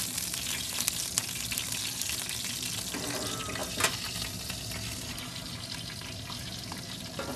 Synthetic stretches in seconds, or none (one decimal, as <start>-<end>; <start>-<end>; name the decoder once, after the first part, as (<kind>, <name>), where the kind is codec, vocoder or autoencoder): none

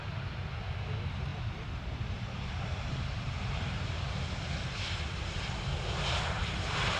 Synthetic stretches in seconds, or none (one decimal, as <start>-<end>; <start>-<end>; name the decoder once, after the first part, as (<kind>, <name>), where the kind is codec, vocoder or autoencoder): none

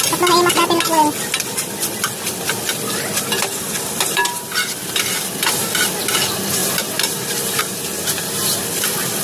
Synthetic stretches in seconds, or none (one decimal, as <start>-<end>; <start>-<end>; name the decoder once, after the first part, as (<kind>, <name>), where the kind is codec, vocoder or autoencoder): 6.6-7.6 (vocoder, BigVGAN v2)